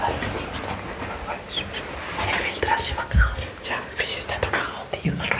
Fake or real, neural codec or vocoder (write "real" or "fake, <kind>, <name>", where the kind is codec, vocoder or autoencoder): real